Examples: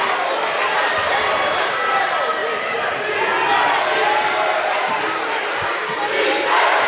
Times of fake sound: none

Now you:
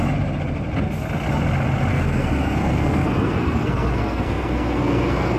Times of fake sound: 1.9-5.4 (codec, SNAC)

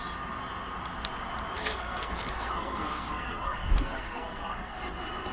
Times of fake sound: 1.6-4.8 (codec, SNAC)

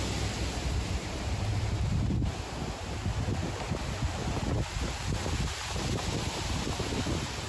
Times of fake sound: none

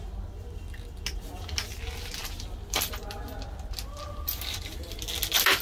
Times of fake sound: none

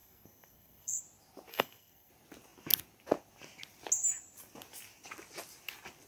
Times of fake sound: 0.0-1.0 (codec, SNAC); 1.5-2.1

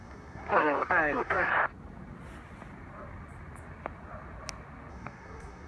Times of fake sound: 0.0-1.5 (codec, SNAC); 4.9-5.7

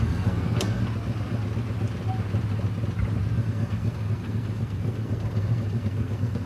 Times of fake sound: 0.0-0.8 (codec, SNAC); 3.4-6.5